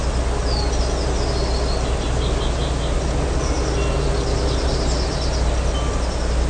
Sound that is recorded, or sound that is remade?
recorded